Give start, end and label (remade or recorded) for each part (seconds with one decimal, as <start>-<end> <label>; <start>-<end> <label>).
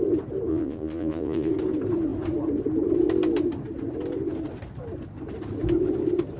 0.0-0.5 recorded; 0.5-1.5 remade; 1.5-6.4 recorded